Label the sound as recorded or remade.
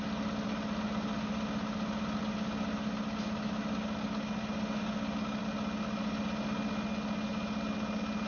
recorded